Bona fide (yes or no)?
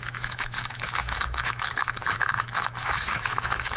no